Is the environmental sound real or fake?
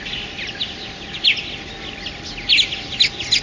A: real